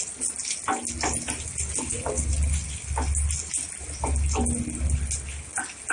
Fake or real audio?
real